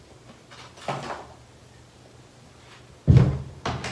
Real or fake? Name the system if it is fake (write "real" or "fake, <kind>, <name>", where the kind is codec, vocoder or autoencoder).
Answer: real